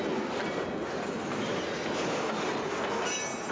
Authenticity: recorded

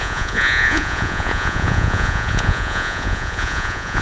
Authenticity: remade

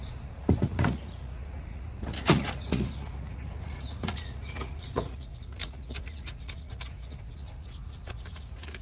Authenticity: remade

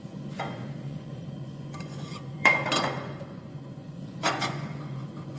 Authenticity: remade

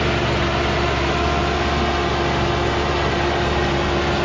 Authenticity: recorded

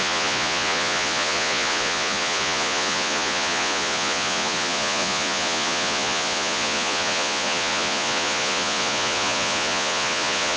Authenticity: remade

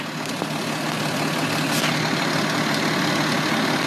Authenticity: recorded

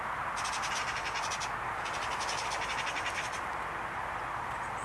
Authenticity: recorded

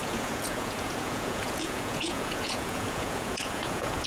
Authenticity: remade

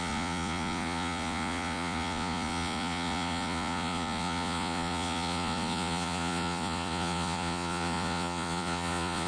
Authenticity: remade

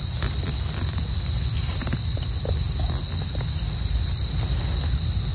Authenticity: recorded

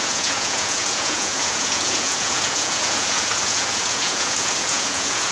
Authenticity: remade